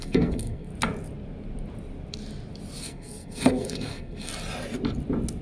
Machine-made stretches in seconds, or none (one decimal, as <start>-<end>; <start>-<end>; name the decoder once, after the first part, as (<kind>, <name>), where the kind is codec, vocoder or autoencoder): 0.0-0.7 (codec, SNAC); 2.8-4.3